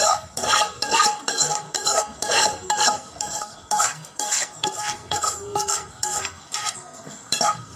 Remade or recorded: remade